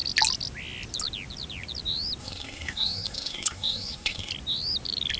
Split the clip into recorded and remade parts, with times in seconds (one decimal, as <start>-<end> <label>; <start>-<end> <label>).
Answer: 0.0-2.2 recorded; 2.2-4.3 remade; 4.3-5.2 recorded